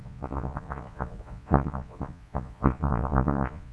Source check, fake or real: fake